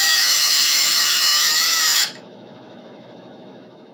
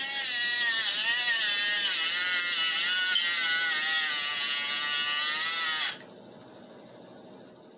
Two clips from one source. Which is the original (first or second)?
second